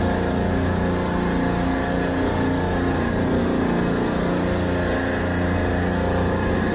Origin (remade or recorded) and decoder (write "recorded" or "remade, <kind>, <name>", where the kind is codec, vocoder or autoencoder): recorded